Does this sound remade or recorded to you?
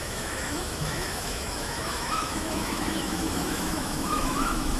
remade